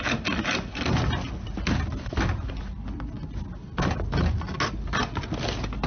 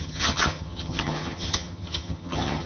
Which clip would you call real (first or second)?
first